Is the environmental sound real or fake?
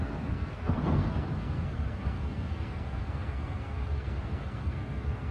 fake